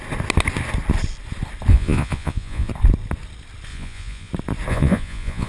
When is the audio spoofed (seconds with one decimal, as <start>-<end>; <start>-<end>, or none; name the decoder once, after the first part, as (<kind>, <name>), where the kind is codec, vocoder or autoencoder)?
1.7-2.7 (vocoder, Vocos); 3.7-4.3; 4.7-5.5